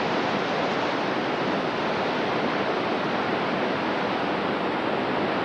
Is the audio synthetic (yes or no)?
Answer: no